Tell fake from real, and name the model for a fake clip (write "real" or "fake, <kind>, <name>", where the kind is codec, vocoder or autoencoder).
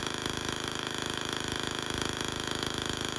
fake, autoencoder, DAC-VAE